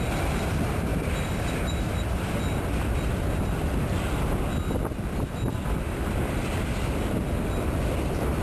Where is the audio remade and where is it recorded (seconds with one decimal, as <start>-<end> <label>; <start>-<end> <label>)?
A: 0.0-0.9 recorded; 0.9-2.2 remade; 2.2-8.4 recorded

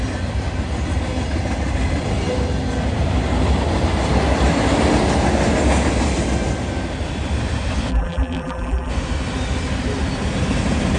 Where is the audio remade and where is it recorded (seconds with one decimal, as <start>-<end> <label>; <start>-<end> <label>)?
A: 0.0-7.9 recorded; 7.9-8.9 remade; 8.9-11.0 recorded

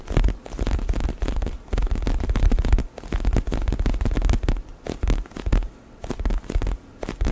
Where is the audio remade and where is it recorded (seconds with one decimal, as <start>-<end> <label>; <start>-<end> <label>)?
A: 0.0-7.3 recorded

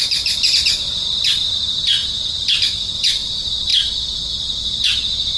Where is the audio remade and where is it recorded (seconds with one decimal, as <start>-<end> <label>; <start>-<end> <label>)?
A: 0.0-5.4 recorded

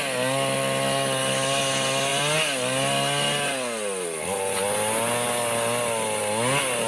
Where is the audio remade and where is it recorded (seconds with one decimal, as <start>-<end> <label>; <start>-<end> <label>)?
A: 0.0-6.9 recorded

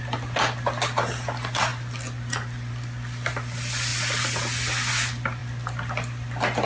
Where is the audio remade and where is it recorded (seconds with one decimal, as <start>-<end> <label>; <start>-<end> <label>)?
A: 0.0-6.7 recorded

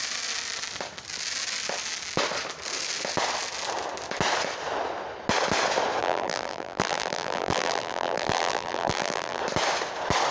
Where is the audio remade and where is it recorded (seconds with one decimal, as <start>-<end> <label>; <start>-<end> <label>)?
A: 0.0-6.0 recorded; 6.0-9.4 remade; 9.4-10.3 recorded

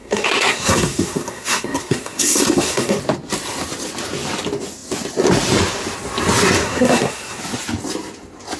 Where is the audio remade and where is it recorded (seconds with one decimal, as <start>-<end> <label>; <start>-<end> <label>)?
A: 0.0-3.0 remade; 3.0-6.6 recorded; 6.6-7.4 remade; 7.4-8.6 recorded